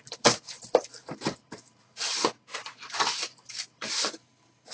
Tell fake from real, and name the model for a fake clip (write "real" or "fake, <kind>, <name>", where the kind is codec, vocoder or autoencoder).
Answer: fake, vocoder, BigVGAN v2